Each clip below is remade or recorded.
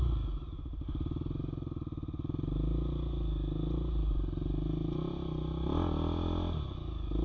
recorded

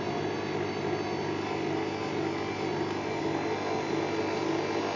recorded